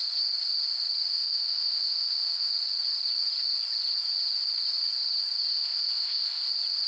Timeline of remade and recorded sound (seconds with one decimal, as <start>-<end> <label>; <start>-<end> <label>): 0.0-1.1 recorded; 1.1-2.5 remade; 2.5-5.5 recorded; 5.5-6.5 remade; 6.5-6.9 recorded